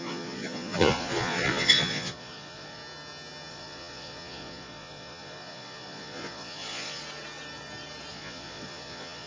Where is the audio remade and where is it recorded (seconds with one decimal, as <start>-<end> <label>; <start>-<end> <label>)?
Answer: 0.0-2.8 remade; 2.8-3.5 recorded; 3.5-7.0 remade; 7.0-8.1 recorded; 8.1-9.3 remade